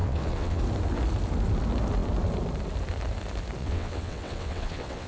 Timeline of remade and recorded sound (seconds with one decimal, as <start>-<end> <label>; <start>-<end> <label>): 0.0-0.6 remade; 0.6-3.6 recorded; 3.6-5.1 remade